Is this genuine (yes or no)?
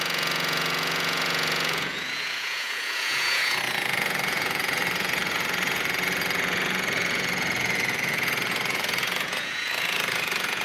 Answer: no